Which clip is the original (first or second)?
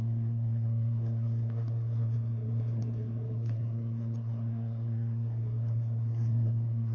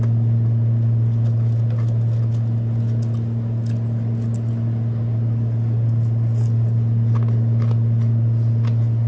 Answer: second